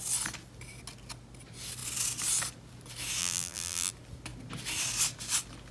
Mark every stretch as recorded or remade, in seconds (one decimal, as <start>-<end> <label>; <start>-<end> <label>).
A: 0.0-3.2 recorded; 3.2-3.9 remade; 3.9-5.7 recorded